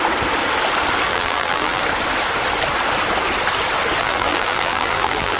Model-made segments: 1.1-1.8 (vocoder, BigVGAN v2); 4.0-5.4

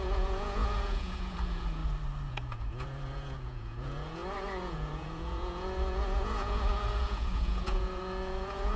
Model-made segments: 0.0-1.8 (vocoder, Vocos); 2.3-8.8

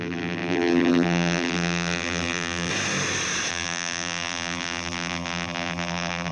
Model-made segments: 0.0-2.7 (vocoder, BigVGAN v2); 3.5-6.3

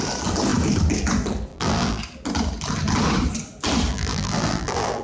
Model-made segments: 1.5-2.0 (vocoder, BigVGAN v2); 3.9-5.0

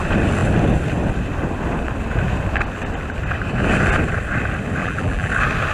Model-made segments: 4.8-5.3 (vocoder, BigVGAN v2)

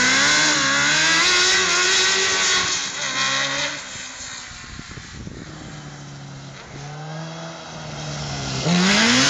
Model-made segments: 8.2-9.3 (codec, SNAC)